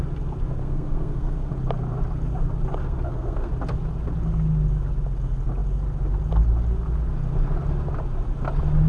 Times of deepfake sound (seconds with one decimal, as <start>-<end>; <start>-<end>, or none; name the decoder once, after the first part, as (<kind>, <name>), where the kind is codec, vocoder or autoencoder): 0.6-1.5 (codec, SNAC); 2.8-3.5